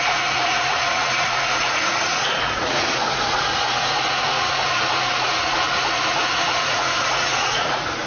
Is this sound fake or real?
fake